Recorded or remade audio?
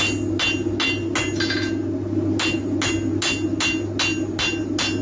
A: recorded